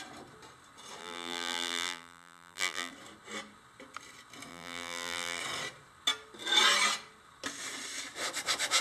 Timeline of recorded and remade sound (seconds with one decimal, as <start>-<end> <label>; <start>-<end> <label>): 0.0-1.0 recorded; 1.0-2.9 remade; 2.9-4.5 recorded; 4.5-5.4 remade; 5.4-8.8 recorded